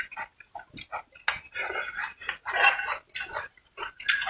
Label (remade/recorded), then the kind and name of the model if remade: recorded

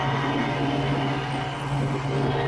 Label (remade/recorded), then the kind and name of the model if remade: recorded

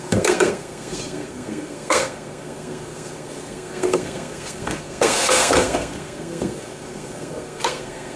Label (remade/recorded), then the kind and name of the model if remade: remade, codec, SNAC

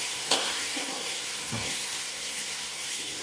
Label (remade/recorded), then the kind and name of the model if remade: remade, codec, SNAC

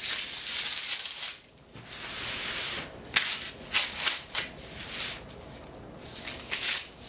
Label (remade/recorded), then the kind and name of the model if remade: recorded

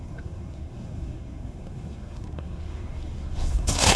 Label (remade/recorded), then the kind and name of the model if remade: remade, codec, SNAC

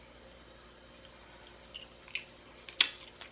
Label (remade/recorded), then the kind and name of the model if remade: recorded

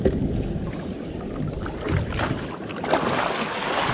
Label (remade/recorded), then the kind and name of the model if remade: recorded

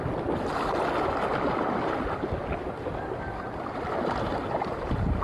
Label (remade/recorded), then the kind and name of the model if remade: recorded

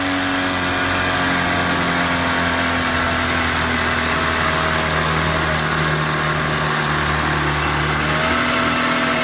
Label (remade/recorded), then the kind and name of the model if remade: recorded